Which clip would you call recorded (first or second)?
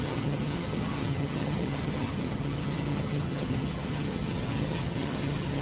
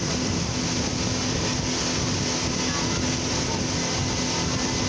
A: second